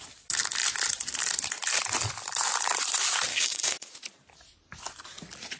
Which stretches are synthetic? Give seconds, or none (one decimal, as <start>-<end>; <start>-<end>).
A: 3.3-3.9